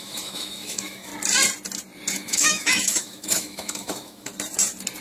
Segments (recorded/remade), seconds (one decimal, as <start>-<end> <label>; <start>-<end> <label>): 0.0-1.1 remade; 1.1-2.1 recorded; 2.1-4.3 remade; 4.3-5.0 recorded